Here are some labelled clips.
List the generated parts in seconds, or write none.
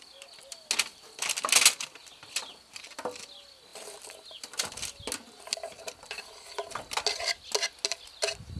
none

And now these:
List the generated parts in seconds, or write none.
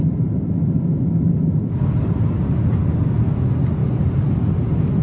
3.8-4.4 (vocoder, BigVGAN v2)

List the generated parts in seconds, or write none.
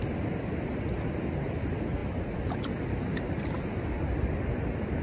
none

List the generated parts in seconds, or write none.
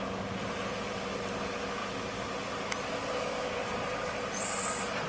1.8-2.3 (vocoder, BigVGAN v2)